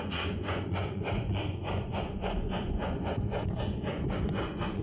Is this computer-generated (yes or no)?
yes